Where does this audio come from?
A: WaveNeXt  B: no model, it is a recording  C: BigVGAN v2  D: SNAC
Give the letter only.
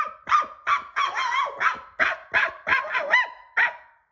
B